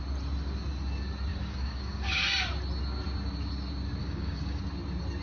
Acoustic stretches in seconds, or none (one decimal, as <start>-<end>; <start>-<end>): 0.0-1.3; 2.2-4.0; 4.6-5.2